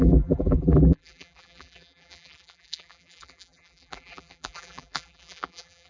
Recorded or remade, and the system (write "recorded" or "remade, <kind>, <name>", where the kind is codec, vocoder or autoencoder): remade, vocoder, BigVGAN v2